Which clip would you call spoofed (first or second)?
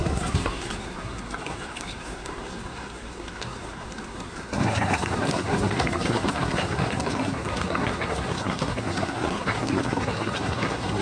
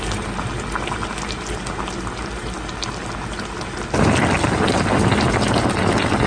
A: first